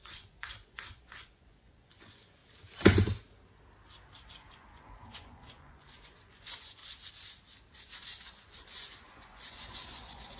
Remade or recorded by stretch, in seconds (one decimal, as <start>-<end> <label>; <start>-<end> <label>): 0.0-2.4 remade; 2.4-4.3 recorded; 4.3-6.8 remade; 6.8-7.7 recorded; 7.7-10.4 remade